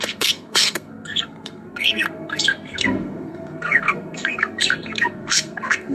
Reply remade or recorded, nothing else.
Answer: remade